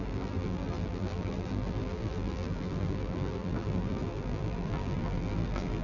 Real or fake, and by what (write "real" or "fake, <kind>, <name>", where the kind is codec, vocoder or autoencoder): fake, vocoder, BigVGAN v2